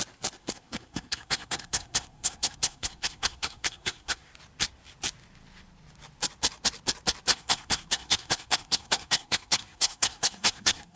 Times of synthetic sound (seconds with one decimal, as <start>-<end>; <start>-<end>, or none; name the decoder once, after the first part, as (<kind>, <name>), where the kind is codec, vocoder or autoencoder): 0.4-4.3 (codec, SNAC); 7.3-11.0